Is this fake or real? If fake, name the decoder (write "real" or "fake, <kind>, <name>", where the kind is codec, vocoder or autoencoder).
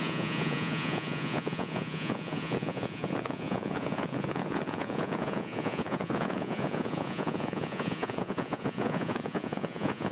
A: fake, vocoder, Vocos